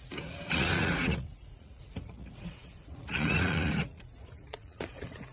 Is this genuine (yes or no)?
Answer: no